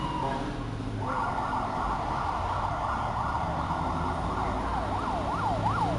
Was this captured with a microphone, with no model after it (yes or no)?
yes